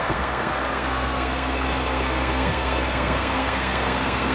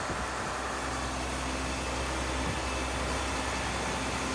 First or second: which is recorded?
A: second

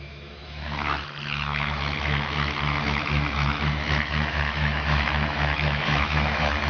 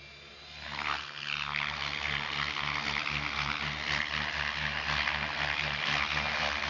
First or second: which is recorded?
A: second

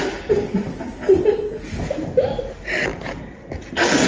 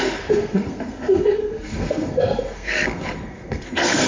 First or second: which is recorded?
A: first